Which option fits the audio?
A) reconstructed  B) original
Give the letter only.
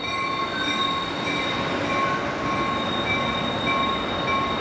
B